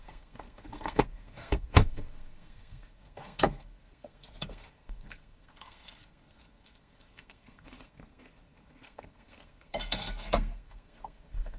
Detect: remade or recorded remade